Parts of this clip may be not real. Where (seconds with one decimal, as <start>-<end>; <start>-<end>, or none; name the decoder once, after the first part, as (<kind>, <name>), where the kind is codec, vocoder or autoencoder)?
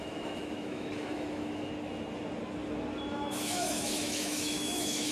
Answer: 0.0-1.7 (autoencoder, DAC-VAE); 3.1-5.1